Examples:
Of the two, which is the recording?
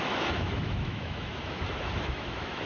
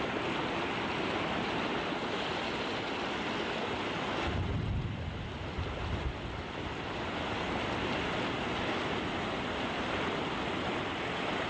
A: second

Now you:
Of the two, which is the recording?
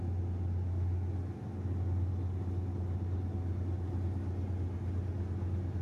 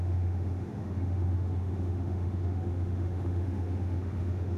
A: first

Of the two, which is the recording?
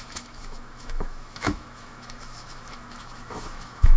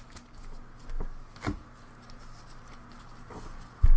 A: second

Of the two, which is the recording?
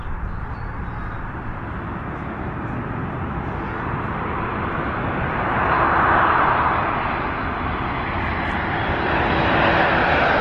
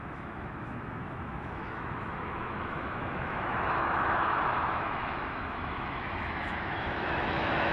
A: first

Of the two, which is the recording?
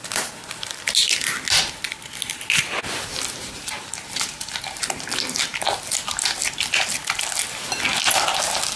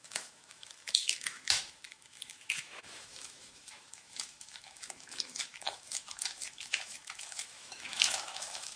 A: first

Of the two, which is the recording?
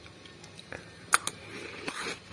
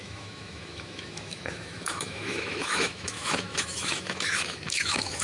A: first